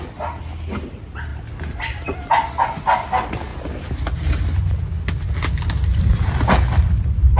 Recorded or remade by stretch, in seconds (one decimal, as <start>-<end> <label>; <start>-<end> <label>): 0.0-1.3 recorded; 1.3-2.2 remade; 2.2-5.9 recorded; 5.9-7.4 remade